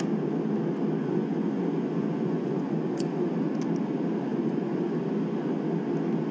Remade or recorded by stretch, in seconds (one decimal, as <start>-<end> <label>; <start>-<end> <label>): 0.0-1.0 recorded; 1.0-3.3 remade; 3.3-4.3 recorded; 4.3-5.0 remade; 5.0-6.3 recorded